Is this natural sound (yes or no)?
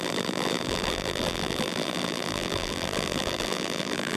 no